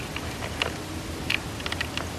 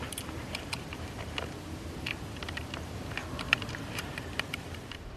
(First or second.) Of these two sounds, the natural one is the first